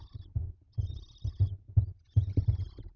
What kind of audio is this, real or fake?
real